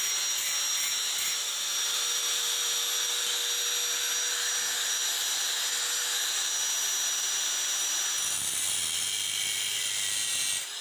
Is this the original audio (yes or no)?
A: yes